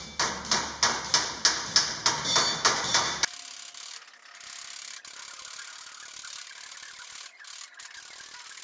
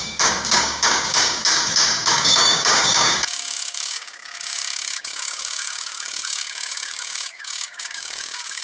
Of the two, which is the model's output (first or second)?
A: second